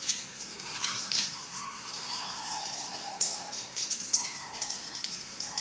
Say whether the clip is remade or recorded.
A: remade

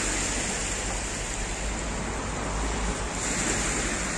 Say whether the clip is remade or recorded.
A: recorded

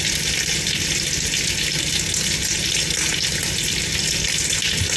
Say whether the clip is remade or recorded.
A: recorded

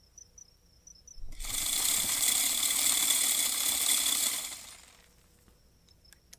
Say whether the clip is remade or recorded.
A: recorded